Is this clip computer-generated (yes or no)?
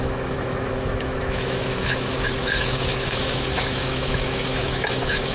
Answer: yes